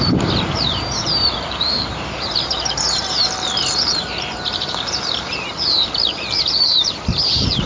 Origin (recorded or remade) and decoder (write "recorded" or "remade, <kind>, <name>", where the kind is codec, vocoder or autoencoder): remade, vocoder, BigVGAN v2